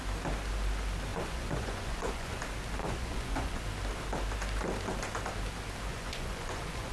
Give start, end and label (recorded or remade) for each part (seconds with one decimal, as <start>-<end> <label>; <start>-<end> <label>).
0.0-1.1 recorded; 1.1-2.4 remade; 2.4-2.8 recorded; 2.8-3.6 remade; 3.6-5.9 recorded; 5.9-6.9 remade